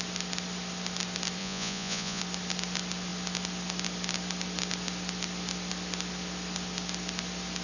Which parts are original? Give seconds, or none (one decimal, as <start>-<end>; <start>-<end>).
0.0-1.4; 2.2-7.6